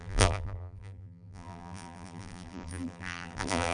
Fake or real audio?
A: fake